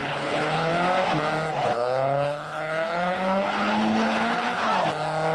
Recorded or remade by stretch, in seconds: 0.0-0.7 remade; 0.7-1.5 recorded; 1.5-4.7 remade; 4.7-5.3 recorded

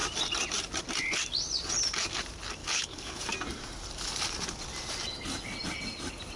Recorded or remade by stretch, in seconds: 0.0-2.6 recorded; 2.6-3.2 remade; 3.2-6.4 recorded

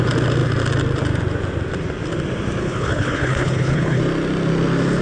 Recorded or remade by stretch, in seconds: 0.0-2.6 recorded; 2.6-4.0 remade; 4.0-5.0 recorded

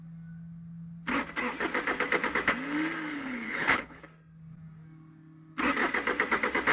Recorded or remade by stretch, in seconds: 0.0-3.1 recorded; 3.1-4.0 remade; 4.0-6.7 recorded

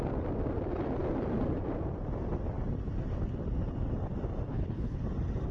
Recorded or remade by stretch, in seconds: 0.0-4.5 recorded; 4.5-5.0 remade; 5.0-5.5 recorded